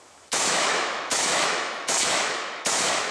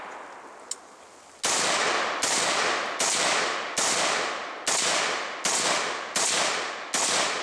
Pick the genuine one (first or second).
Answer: second